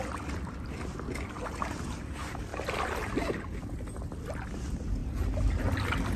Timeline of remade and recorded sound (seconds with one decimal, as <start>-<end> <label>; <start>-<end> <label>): 0.0-6.2 recorded